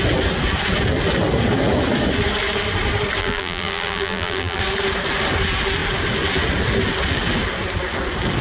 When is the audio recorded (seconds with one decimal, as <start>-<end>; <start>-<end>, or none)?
0.0-3.2; 4.6-8.4

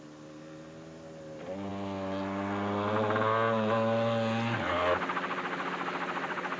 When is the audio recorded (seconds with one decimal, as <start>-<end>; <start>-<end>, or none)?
0.0-6.6